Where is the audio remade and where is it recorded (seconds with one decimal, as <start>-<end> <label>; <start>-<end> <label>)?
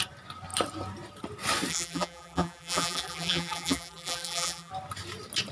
0.0-1.7 recorded; 1.7-4.7 remade; 4.7-5.5 recorded